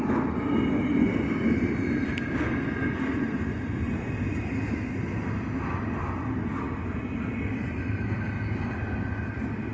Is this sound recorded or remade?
recorded